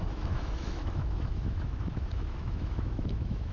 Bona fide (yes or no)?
no